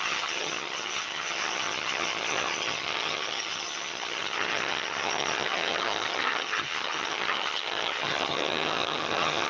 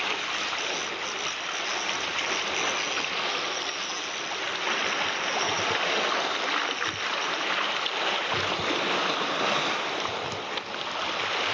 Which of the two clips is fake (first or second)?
first